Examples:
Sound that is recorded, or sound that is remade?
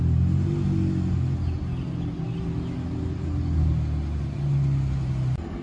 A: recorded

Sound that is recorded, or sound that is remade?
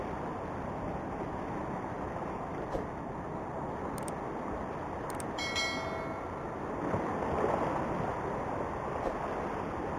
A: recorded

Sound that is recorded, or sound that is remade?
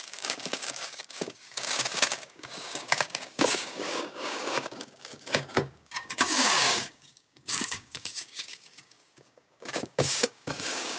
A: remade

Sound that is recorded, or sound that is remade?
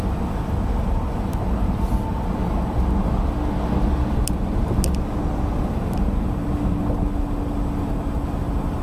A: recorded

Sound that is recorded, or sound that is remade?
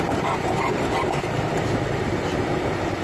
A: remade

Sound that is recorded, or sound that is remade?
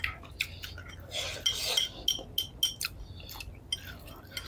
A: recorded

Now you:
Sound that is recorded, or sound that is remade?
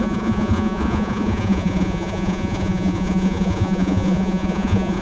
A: remade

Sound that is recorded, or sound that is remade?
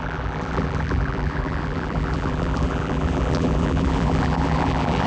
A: remade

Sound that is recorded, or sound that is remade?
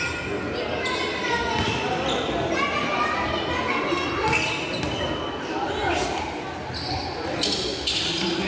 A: recorded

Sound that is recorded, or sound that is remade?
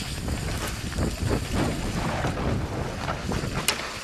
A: recorded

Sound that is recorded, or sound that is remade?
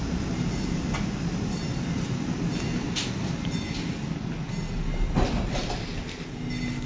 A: recorded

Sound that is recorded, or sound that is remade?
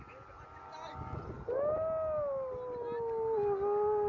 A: recorded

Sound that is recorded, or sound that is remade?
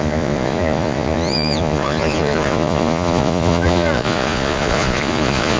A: remade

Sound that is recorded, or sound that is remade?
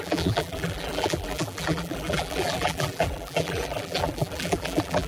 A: remade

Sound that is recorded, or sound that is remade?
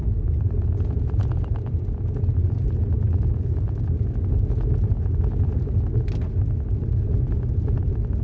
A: recorded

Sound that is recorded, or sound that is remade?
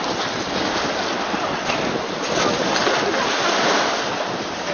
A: recorded